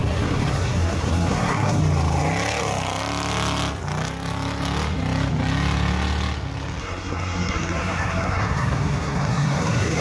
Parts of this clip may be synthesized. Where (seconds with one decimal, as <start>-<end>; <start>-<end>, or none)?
0.0-1.8; 6.8-10.0